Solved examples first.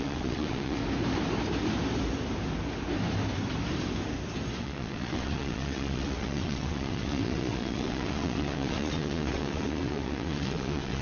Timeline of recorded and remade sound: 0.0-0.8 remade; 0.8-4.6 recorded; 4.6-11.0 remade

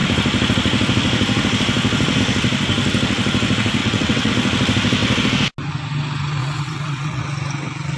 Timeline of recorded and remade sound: 0.0-3.8 recorded; 3.8-4.3 remade; 4.3-6.4 recorded; 6.4-7.2 remade; 7.2-8.0 recorded

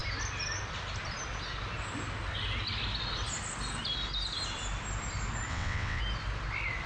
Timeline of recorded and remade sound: 0.0-5.5 recorded; 5.5-6.0 remade; 6.0-6.9 recorded

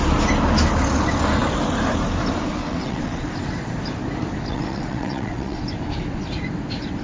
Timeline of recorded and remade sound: 0.0-2.6 recorded; 2.6-3.3 remade; 3.3-4.5 recorded; 4.5-5.6 remade; 5.6-7.0 recorded